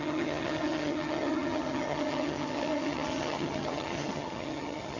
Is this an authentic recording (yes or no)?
no